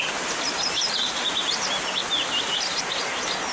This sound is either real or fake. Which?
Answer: real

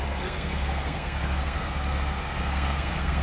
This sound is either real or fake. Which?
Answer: fake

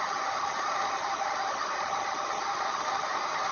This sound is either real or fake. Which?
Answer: real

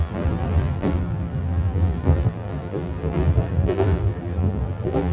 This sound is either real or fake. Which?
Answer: fake